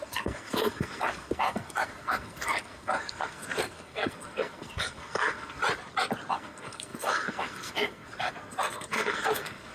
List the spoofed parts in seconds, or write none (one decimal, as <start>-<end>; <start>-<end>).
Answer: 0.0-5.6; 6.3-9.7